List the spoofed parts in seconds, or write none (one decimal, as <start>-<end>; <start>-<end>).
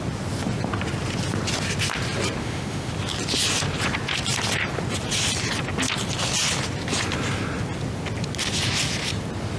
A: 2.4-2.9